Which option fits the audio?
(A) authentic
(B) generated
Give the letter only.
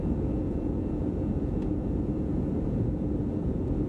B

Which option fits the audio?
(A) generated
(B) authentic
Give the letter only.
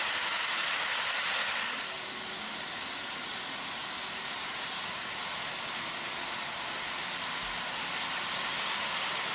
B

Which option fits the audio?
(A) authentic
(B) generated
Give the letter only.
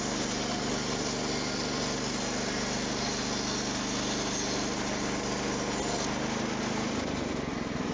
A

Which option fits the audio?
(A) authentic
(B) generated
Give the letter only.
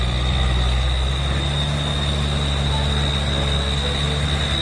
A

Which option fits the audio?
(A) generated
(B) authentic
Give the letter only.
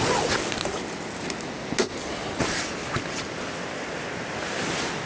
B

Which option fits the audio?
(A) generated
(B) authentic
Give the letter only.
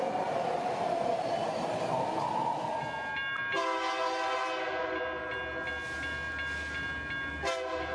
B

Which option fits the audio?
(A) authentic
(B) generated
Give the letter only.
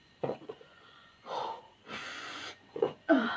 B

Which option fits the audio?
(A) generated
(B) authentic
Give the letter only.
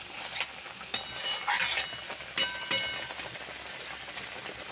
B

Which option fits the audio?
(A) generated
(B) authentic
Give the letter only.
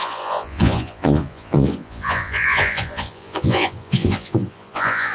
A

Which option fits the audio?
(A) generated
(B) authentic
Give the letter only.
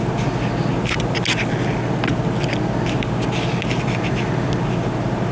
B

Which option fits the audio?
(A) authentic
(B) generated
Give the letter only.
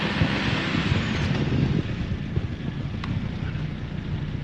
A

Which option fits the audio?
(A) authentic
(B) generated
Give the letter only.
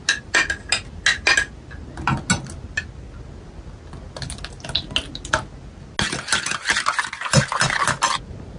A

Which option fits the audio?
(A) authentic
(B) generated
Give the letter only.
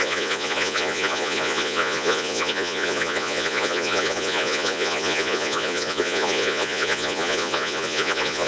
B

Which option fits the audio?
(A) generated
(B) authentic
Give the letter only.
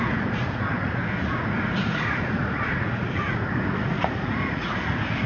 A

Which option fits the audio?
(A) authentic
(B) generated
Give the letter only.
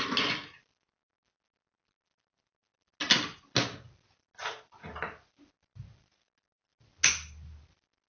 A